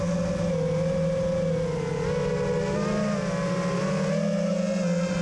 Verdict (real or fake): real